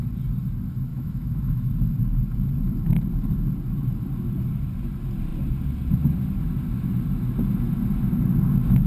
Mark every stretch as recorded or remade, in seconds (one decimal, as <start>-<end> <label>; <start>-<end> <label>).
0.0-0.9 recorded; 0.9-1.7 remade; 1.7-8.9 recorded